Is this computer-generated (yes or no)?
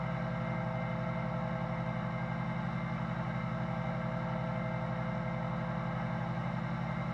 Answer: no